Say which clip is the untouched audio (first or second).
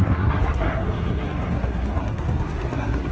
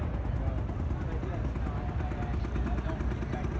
second